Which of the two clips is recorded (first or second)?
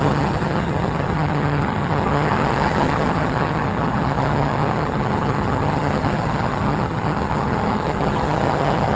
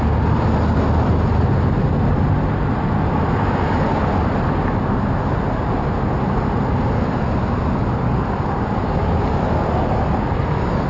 second